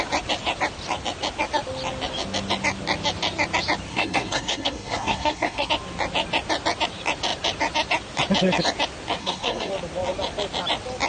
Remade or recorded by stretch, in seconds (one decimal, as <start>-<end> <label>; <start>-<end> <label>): 0.0-3.9 recorded; 3.9-5.7 remade; 5.7-9.2 recorded; 9.2-9.7 remade; 9.7-11.1 recorded